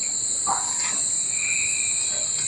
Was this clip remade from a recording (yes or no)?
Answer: no